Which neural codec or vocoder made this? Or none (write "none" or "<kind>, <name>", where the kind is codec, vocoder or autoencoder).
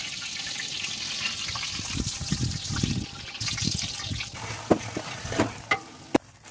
none